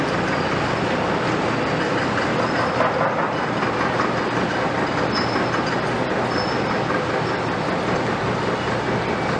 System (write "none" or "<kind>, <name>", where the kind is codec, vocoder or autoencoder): none